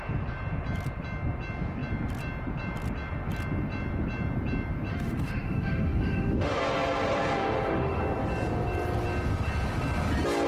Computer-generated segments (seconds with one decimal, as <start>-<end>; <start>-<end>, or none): 4.9-6.6; 7.4-8.0